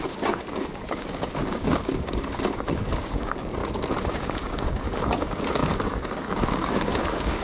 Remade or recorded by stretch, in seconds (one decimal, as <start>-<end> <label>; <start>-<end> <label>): 0.0-3.6 remade; 3.6-4.1 recorded; 4.1-7.4 remade

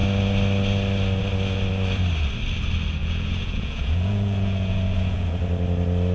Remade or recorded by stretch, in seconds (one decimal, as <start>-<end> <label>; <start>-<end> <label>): 0.0-3.0 recorded; 3.0-5.3 remade; 5.3-6.1 recorded

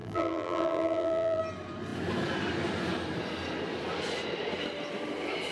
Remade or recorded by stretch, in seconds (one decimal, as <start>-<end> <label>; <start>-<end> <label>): 0.0-1.4 remade; 1.4-5.5 recorded

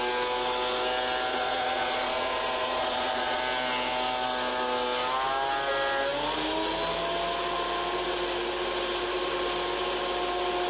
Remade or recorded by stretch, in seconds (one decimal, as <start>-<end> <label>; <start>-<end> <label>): 0.0-1.3 recorded; 1.3-3.4 remade; 3.4-10.7 recorded

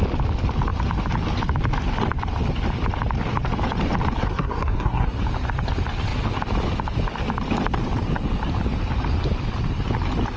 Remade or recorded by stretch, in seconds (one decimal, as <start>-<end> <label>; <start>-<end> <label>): 0.0-4.2 recorded; 4.2-5.2 remade; 5.2-10.4 recorded

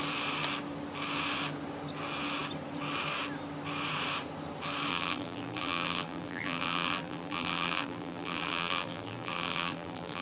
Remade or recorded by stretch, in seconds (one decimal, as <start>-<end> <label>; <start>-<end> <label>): 0.0-4.9 recorded; 4.9-10.2 remade

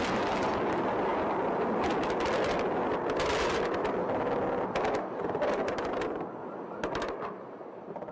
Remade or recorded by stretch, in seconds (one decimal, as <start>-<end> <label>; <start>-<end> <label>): 0.0-8.1 recorded